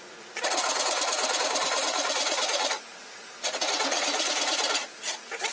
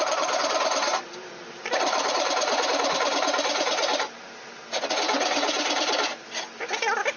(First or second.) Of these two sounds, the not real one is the first